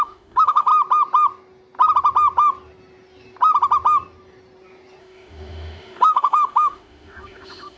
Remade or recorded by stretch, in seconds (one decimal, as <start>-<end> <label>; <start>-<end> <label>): 0.0-0.7 remade; 0.7-5.0 recorded; 5.0-7.8 remade

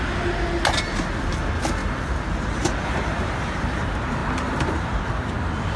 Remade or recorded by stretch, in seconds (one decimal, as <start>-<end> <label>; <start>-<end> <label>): 0.0-1.8 recorded; 1.8-3.8 remade; 3.8-4.2 recorded; 4.2-5.1 remade; 5.1-5.8 recorded

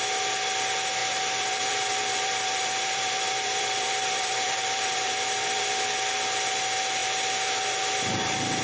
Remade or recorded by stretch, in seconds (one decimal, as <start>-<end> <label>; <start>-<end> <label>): 0.0-1.0 recorded; 1.0-5.6 remade; 5.6-8.6 recorded

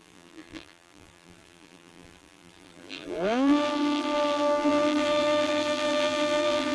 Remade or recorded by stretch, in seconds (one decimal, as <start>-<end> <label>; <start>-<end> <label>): 0.0-6.7 remade

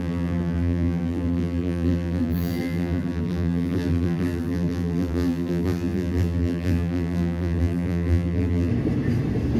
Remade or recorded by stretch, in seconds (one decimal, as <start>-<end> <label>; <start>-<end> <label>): 0.0-8.7 remade; 8.7-9.6 recorded

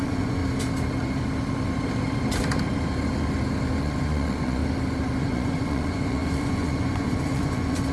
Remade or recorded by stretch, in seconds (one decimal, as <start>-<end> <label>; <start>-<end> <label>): 0.0-0.4 remade; 0.4-3.8 recorded; 3.8-4.6 remade; 4.6-5.2 recorded; 5.2-7.9 remade

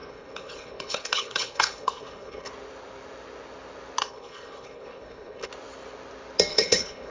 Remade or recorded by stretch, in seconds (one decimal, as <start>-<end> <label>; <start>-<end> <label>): 0.0-2.5 remade; 2.5-4.0 recorded; 4.0-5.5 remade; 5.5-6.5 recorded; 6.5-7.1 remade

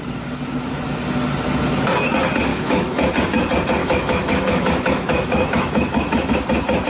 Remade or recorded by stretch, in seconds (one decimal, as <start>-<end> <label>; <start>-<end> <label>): 0.0-2.5 recorded; 2.5-3.1 remade; 3.1-3.8 recorded; 3.8-6.3 remade; 6.3-6.9 recorded